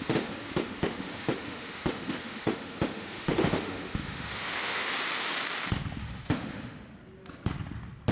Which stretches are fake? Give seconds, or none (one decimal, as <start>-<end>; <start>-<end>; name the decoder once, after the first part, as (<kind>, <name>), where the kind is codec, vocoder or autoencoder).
0.0-4.9 (autoencoder, DAC-VAE); 6.0-6.9